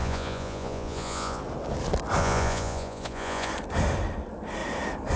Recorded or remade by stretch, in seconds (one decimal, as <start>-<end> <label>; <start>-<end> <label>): 0.0-1.4 remade; 1.4-2.2 recorded; 2.2-3.5 remade; 3.5-5.2 recorded